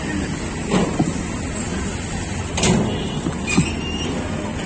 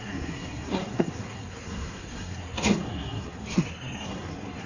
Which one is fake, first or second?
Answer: second